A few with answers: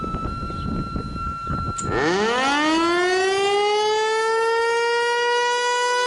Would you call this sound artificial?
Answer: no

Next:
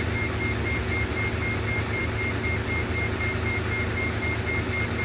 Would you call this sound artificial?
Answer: no